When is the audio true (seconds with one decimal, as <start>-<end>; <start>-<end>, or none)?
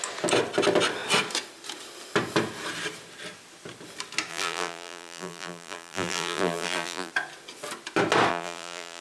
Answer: 0.0-4.3; 7.1-8.3